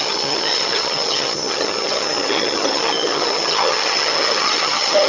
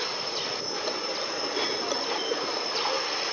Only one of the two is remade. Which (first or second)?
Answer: first